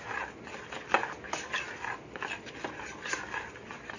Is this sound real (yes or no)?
yes